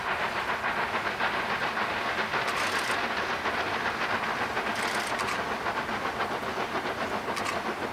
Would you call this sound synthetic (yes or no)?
no